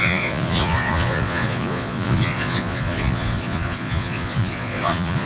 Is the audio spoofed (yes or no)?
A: yes